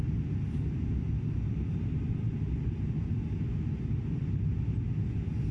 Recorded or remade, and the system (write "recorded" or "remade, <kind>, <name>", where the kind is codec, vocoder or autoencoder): recorded